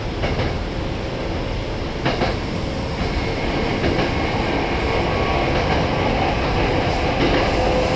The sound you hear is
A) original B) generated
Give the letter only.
A